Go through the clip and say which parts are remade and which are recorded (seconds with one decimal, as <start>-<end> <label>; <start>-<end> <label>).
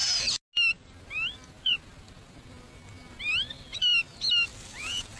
0.0-5.2 recorded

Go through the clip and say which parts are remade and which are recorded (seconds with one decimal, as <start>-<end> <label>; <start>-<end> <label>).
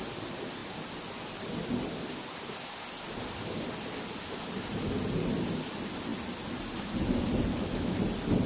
0.0-7.5 recorded; 7.5-8.0 remade; 8.0-8.5 recorded